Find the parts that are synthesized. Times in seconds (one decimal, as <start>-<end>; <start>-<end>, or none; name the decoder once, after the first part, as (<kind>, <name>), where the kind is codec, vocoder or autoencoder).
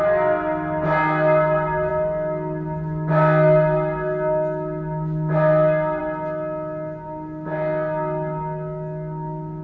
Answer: none